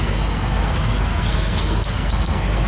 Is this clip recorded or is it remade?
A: remade